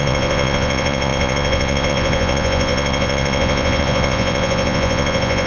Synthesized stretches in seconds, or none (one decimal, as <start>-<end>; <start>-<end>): 0.0-5.5